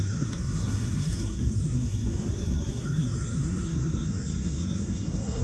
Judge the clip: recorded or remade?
remade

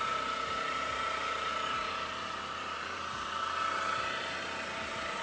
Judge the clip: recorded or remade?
remade